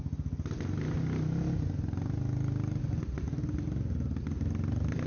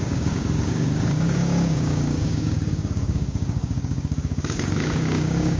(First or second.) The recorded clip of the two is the first